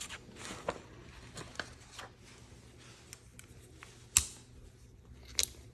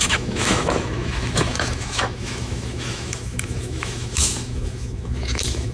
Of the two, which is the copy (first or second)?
second